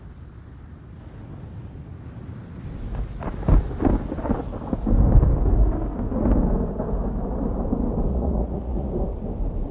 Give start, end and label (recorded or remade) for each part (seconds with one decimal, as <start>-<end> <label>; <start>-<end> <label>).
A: 0.0-8.1 recorded; 8.1-8.9 remade; 8.9-9.7 recorded